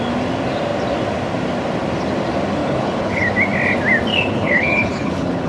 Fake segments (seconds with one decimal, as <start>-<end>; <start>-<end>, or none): 2.6-3.2; 4.1-5.5